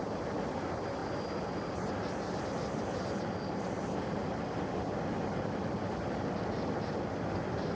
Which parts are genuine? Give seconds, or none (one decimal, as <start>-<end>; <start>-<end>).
0.0-7.7

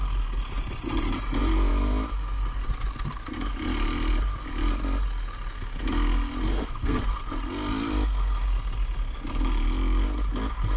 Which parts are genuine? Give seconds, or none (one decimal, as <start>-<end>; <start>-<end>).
0.0-6.5; 7.0-10.8

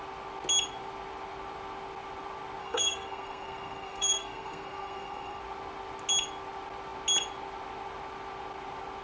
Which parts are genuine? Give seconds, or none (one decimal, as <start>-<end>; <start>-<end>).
0.0-2.6; 5.4-9.0

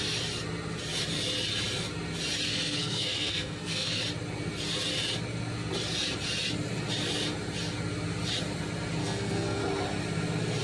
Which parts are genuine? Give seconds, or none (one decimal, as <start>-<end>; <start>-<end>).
0.0-2.5; 4.0-9.0; 9.6-10.6

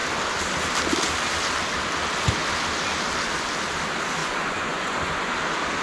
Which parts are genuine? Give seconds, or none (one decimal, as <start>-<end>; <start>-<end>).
0.0-4.2; 5.3-5.8

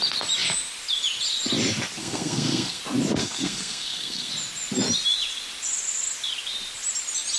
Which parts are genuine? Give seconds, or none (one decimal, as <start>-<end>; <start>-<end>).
0.0-2.0; 2.8-3.2; 4.3-7.4

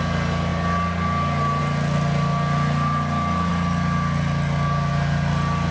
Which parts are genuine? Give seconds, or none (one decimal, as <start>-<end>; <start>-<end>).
0.0-5.7

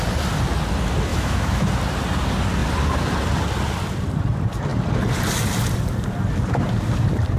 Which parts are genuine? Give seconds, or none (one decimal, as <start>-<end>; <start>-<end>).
0.0-1.1; 1.6-7.4